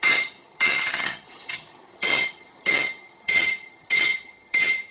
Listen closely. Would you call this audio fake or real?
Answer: fake